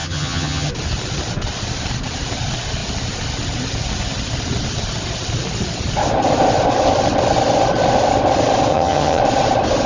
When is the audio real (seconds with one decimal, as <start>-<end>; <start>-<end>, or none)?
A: 0.7-8.7; 9.2-9.9